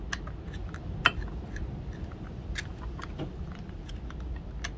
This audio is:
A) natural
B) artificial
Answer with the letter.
A